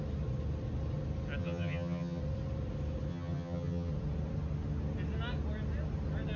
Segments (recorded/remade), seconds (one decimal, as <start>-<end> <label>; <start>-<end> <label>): 0.0-1.4 recorded; 1.4-2.2 remade; 2.2-3.1 recorded; 3.1-3.9 remade; 3.9-6.4 recorded